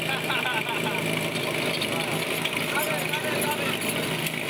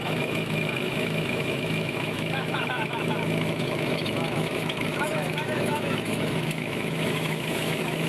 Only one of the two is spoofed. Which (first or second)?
second